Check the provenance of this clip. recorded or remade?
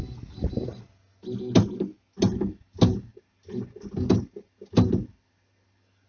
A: recorded